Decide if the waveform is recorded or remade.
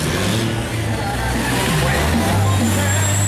recorded